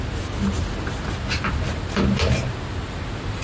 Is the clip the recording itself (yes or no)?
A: yes